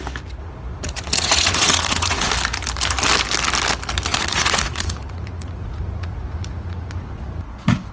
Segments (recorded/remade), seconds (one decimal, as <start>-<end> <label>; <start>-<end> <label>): 0.0-0.7 recorded; 0.7-2.3 remade; 2.3-4.1 recorded; 4.1-7.9 remade